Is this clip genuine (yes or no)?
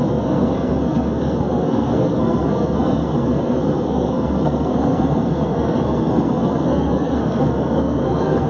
no